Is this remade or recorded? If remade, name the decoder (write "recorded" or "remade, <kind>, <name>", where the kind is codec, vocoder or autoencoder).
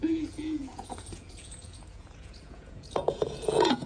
remade, vocoder, Vocos